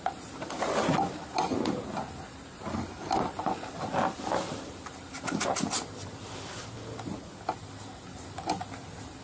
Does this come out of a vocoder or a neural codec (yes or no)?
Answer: no